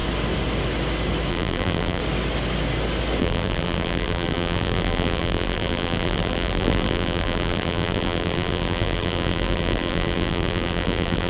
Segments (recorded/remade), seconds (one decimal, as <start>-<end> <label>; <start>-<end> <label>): 0.0-1.3 recorded; 1.3-2.0 remade; 2.0-3.2 recorded; 3.2-11.3 remade